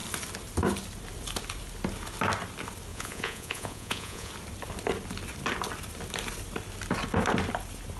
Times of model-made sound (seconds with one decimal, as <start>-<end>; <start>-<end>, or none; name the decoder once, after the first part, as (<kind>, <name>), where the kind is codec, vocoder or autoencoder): 2.9-4.3 (vocoder, Vocos)